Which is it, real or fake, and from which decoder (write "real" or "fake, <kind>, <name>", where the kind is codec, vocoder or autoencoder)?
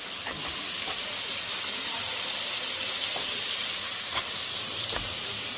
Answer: real